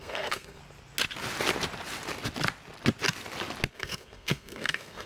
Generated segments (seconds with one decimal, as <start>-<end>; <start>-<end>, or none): 0.0-0.6; 3.7-5.1